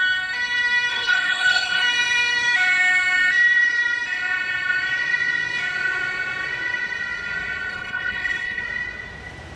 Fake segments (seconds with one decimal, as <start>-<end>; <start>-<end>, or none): 0.9-1.8; 7.7-8.6

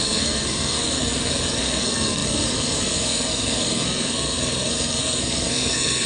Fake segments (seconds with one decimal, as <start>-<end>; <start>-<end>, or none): 0.0-6.1